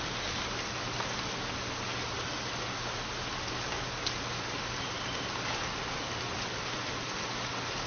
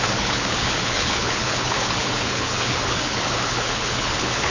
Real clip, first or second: first